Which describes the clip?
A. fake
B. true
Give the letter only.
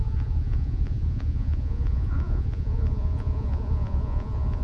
A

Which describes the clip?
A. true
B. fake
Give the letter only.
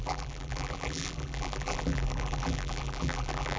B